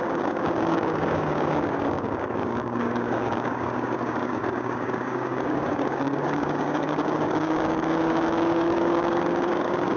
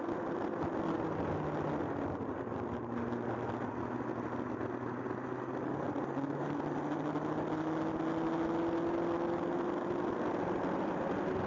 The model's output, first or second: first